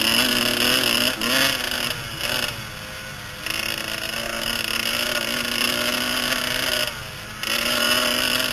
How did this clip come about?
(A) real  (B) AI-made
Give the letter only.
A